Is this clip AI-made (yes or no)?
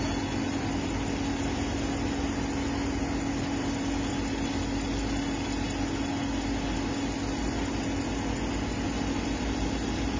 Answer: no